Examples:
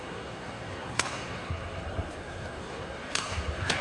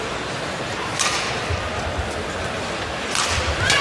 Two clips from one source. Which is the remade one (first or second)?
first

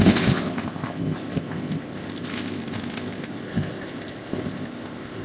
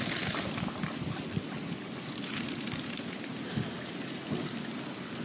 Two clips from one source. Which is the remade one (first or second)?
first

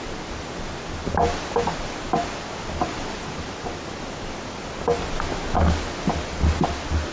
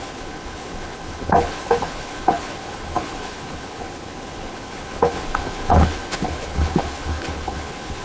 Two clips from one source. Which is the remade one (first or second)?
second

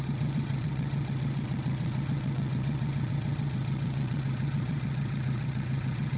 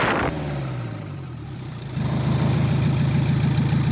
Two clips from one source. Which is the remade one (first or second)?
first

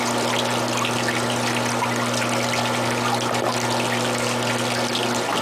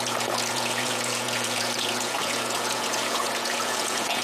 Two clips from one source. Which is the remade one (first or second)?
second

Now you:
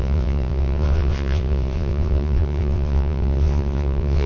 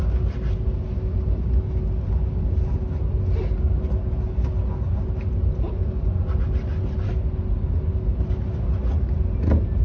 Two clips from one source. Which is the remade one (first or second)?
first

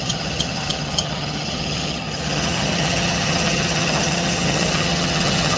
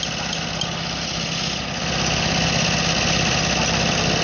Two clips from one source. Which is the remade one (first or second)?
first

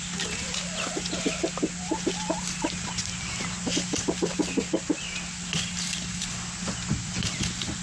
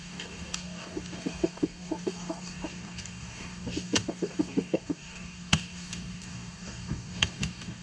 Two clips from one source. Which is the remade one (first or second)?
second